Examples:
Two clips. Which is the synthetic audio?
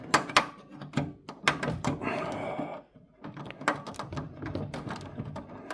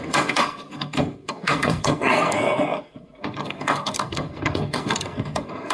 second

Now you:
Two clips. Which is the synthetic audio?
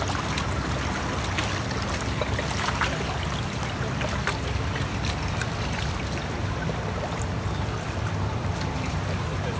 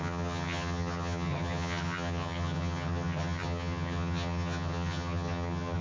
second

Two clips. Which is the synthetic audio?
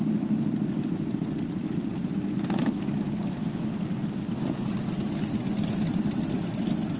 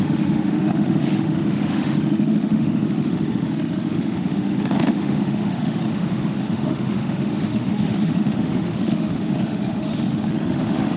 second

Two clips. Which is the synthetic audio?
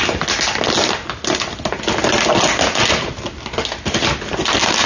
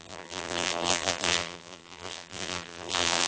second